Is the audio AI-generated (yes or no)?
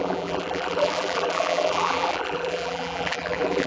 yes